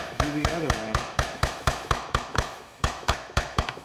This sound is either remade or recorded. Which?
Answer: remade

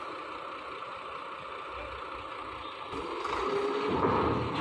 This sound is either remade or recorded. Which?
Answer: recorded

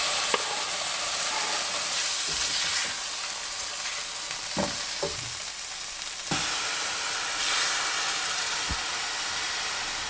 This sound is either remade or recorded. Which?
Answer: recorded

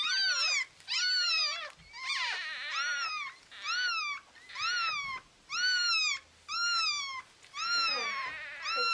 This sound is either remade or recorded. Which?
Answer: recorded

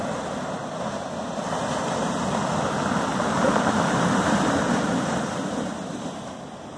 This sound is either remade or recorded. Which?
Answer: recorded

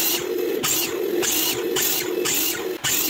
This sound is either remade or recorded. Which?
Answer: recorded